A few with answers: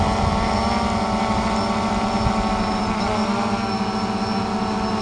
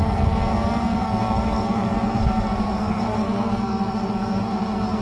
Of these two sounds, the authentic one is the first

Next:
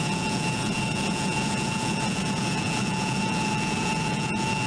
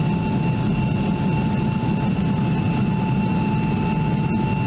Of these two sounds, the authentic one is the second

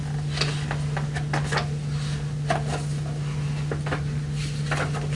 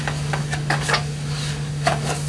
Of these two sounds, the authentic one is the first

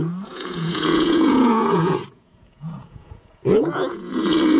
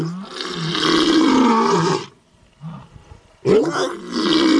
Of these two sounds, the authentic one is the second